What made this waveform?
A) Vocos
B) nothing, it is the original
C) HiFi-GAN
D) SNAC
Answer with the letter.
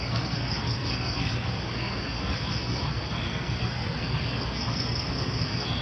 D